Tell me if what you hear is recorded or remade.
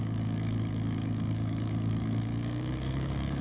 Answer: remade